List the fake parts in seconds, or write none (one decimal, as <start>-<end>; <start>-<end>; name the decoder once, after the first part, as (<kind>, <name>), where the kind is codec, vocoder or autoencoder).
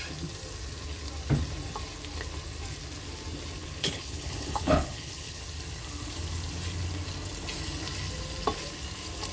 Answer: 3.6-5.4 (codec, HILCodec)